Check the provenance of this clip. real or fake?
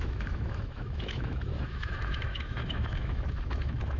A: fake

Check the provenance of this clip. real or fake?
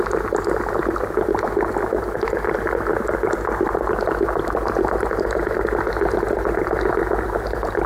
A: real